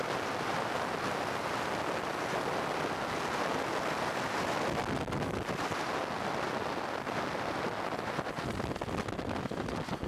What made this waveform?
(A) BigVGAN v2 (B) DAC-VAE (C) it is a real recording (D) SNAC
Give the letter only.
C